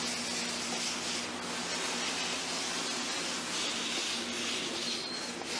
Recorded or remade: recorded